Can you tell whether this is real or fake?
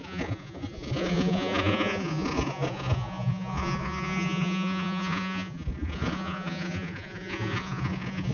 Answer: fake